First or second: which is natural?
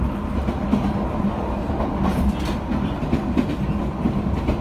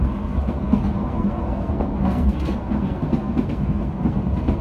first